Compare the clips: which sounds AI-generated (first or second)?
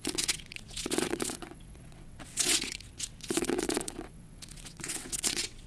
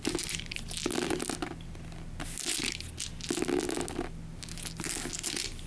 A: first